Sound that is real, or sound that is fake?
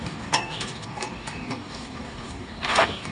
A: fake